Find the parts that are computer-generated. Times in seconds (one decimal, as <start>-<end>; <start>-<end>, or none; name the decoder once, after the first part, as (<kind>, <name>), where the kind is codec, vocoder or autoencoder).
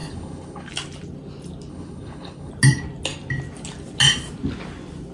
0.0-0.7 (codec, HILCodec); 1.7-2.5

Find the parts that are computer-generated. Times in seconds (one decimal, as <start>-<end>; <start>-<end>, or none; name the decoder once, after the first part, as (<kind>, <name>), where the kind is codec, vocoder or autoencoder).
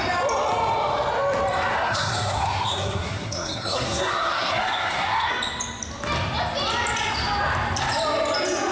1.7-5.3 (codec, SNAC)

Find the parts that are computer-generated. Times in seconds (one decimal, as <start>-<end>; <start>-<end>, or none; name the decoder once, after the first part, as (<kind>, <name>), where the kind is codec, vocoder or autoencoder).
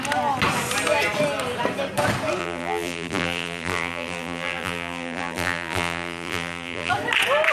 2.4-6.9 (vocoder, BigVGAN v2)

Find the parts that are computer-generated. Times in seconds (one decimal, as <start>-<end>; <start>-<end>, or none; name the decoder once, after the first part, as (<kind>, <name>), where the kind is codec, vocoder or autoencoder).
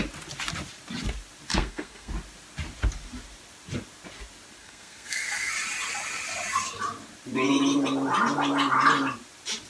1.5-2.1 (codec, SNAC); 4.6-5.5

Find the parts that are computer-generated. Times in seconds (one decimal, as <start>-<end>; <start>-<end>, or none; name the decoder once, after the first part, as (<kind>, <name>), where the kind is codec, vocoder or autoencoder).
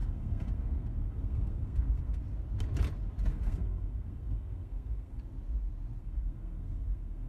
0.0-2.2 (codec, SNAC); 3.3-5.2; 6.0-7.3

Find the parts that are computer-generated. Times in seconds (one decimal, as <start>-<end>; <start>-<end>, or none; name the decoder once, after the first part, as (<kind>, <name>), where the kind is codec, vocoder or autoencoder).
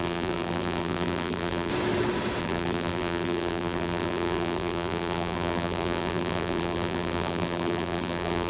0.0-1.7 (vocoder, BigVGAN v2); 2.4-8.5